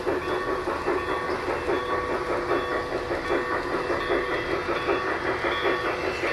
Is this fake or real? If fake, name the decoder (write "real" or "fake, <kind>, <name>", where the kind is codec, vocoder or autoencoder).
real